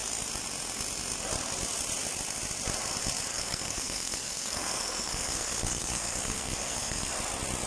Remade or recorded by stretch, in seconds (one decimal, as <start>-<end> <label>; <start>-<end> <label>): 0.0-3.3 recorded; 3.3-7.1 remade; 7.1-7.7 recorded